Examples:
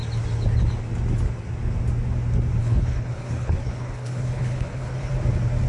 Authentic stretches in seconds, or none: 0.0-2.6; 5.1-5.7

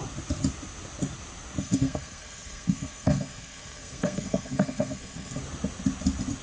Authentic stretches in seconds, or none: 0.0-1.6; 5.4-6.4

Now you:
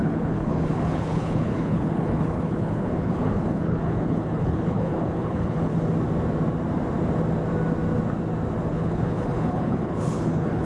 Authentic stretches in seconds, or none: 5.7-8.7